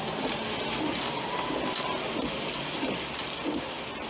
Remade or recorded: recorded